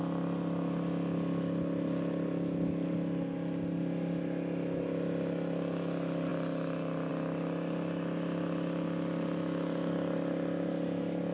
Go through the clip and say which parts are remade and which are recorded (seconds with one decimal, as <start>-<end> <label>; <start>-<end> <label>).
0.0-11.3 recorded